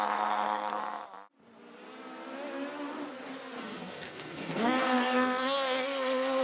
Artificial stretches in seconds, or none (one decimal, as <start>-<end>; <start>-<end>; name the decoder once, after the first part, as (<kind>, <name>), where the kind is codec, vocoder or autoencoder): 0.0-0.8 (codec, SNAC); 3.6-6.4